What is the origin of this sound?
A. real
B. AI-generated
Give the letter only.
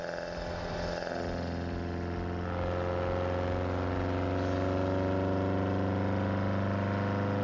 A